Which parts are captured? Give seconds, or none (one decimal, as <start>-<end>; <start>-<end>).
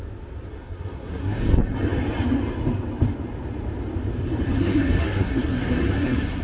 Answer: 0.0-0.5; 1.4-4.6